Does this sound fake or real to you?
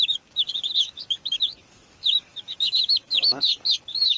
fake